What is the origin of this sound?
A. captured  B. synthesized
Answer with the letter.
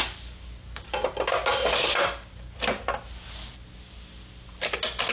A